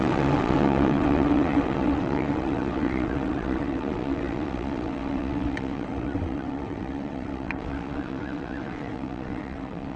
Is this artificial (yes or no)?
yes